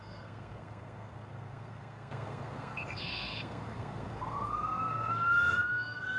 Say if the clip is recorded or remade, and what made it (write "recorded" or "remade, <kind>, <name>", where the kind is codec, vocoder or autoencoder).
remade, codec, SNAC